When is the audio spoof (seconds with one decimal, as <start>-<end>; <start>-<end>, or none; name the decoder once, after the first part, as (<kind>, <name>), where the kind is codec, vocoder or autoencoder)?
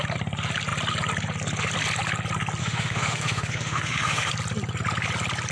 2.6-4.3 (autoencoder, DAC-VAE)